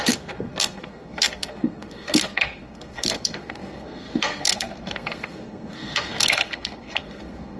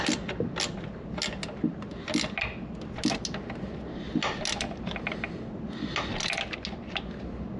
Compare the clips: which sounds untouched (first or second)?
second